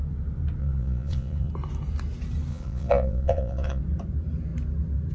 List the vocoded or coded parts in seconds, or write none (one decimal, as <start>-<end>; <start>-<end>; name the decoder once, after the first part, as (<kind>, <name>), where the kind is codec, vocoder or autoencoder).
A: 0.6-1.5 (vocoder, Vocos); 2.5-3.8